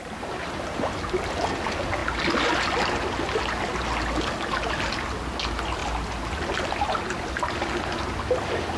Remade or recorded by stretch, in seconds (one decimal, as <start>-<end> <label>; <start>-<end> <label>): 0.0-8.8 recorded

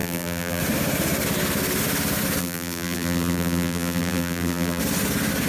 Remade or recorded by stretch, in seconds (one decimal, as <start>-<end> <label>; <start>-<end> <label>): 0.0-0.6 remade; 0.6-2.4 recorded; 2.4-4.8 remade; 4.8-5.5 recorded

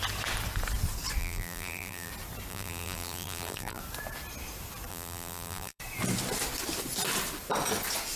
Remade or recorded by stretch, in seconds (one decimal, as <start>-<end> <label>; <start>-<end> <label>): 0.0-1.2 recorded; 1.2-2.1 remade; 2.1-2.5 recorded; 2.5-3.8 remade; 3.8-4.9 recorded; 4.9-5.8 remade; 5.8-8.2 recorded

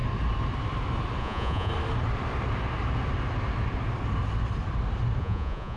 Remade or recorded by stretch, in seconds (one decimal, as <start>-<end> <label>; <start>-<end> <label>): 0.0-1.2 recorded; 1.2-1.7 remade; 1.7-5.2 recorded; 5.2-5.8 remade